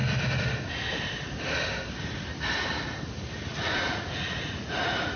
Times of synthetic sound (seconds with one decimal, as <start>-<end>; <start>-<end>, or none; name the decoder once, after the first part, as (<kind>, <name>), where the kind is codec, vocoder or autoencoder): 3.5-5.2 (vocoder, Vocos)